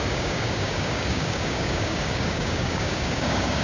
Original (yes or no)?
no